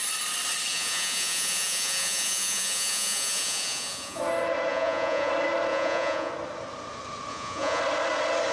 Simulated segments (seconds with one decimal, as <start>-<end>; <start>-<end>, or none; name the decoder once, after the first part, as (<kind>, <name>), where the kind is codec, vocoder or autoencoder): 0.7-4.2 (vocoder, Vocos); 4.7-5.3; 5.7-6.3; 7.3-7.8